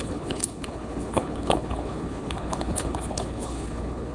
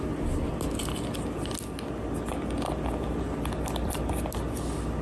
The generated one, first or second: first